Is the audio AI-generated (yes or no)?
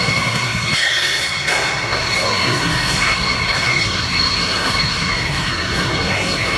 yes